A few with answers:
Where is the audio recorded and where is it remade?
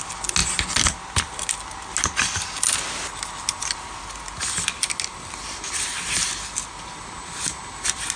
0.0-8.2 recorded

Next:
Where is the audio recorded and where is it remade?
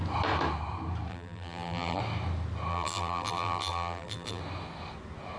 0.0-1.1 recorded; 1.1-2.0 remade; 2.0-2.7 recorded; 2.7-4.4 remade; 4.4-5.4 recorded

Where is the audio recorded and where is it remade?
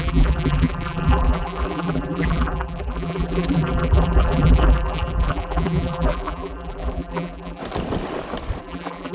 0.0-7.6 remade; 7.6-8.6 recorded; 8.6-9.1 remade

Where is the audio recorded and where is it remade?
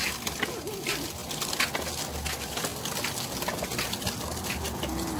0.0-5.2 recorded